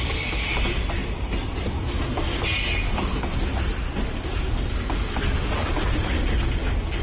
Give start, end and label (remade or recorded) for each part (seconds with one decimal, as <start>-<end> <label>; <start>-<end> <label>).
0.0-7.0 recorded